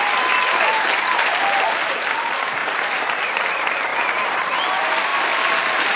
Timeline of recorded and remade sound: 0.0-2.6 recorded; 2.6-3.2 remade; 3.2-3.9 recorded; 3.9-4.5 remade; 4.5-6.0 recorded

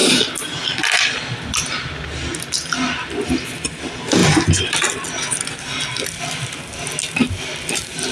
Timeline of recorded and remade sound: 0.0-8.1 recorded

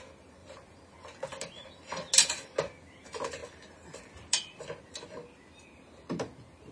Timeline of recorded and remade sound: 0.0-0.4 recorded; 0.4-1.0 remade; 1.0-1.6 recorded; 1.6-2.1 remade; 2.1-6.7 recorded

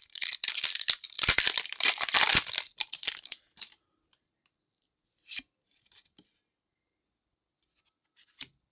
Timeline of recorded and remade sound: 0.0-4.3 remade; 4.3-8.7 recorded

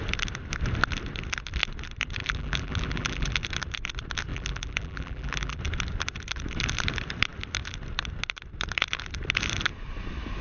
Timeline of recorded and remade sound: 0.0-2.2 recorded; 2.2-3.4 remade; 3.4-4.3 recorded; 4.3-5.6 remade; 5.6-10.4 recorded

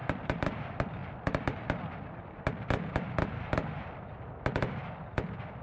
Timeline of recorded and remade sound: 0.0-0.6 remade; 0.6-5.6 recorded